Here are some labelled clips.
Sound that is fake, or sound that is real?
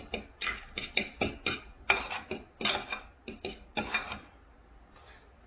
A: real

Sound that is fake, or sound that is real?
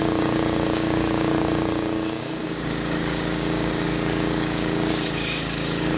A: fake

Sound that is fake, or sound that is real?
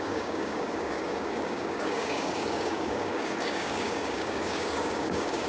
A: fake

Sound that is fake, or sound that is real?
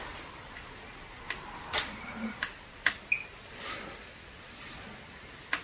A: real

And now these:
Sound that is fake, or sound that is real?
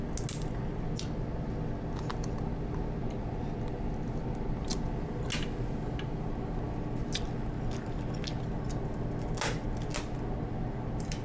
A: real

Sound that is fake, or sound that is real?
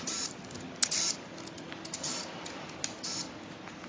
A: real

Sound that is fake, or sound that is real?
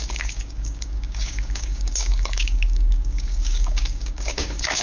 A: fake